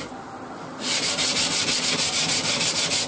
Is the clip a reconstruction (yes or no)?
no